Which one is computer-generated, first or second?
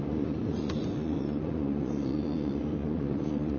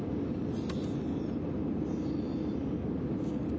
first